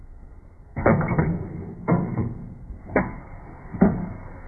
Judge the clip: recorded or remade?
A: remade